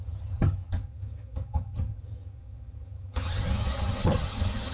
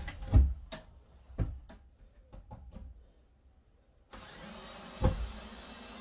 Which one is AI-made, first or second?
first